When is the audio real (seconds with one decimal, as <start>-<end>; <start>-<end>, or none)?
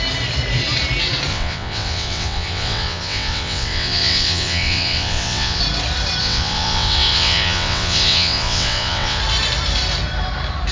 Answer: 0.0-1.3; 5.6-6.2; 9.2-10.7